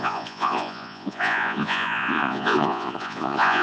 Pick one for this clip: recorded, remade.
remade